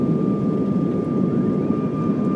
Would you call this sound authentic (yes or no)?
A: yes